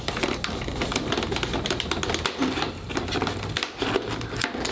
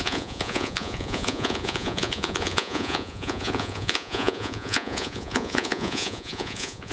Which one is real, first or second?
first